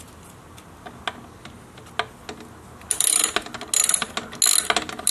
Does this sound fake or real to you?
real